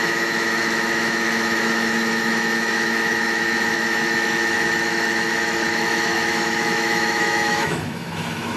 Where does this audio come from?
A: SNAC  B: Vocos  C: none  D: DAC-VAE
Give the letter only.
D